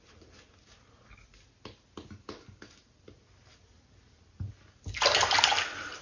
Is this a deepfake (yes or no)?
no